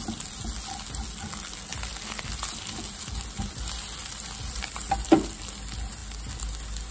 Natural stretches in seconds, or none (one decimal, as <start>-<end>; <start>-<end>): 0.0-6.9